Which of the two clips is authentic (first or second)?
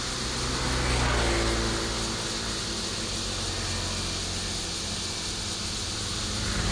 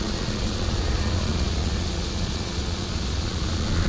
first